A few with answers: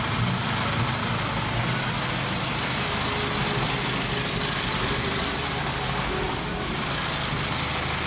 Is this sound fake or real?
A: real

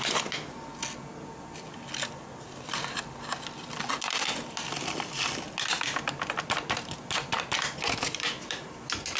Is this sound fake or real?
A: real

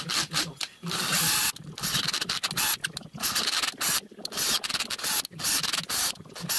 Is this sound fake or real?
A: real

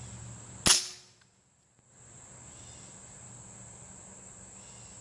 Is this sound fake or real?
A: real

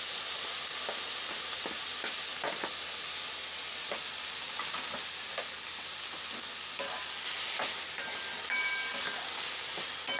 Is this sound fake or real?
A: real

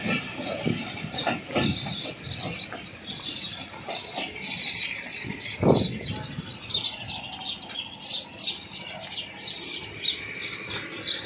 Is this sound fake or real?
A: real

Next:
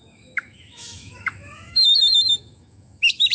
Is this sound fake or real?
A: fake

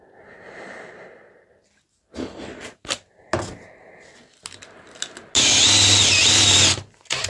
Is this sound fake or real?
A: real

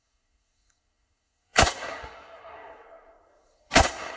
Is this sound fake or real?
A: fake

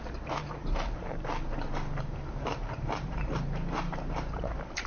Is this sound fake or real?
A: fake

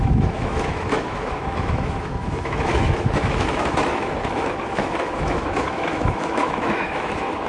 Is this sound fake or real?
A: fake